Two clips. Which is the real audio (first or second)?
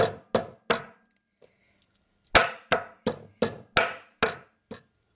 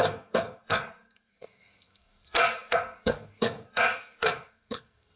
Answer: first